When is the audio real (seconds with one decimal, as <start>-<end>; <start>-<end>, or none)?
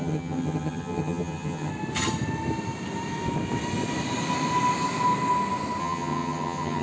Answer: 1.7-5.8